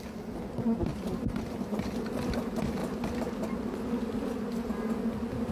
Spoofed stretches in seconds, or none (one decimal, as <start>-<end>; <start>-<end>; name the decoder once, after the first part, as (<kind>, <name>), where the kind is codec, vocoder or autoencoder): 0.9-1.9 (vocoder, BigVGAN v2)